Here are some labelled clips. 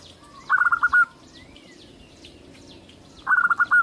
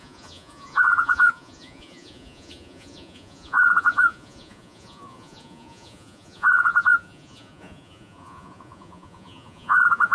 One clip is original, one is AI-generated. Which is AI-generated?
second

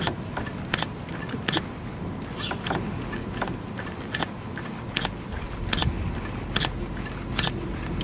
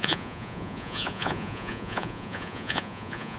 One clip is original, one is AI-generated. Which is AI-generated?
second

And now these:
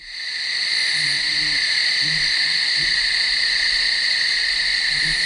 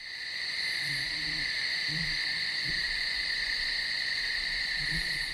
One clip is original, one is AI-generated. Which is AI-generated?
second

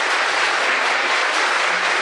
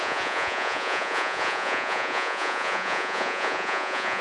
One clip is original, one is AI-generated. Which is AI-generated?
second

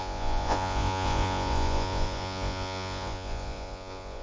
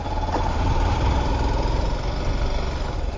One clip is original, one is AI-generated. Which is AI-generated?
first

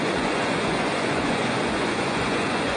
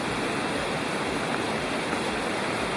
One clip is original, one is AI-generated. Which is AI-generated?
first